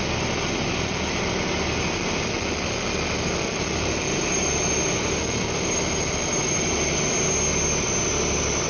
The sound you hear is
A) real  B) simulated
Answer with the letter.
A